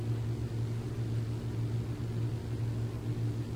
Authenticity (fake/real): real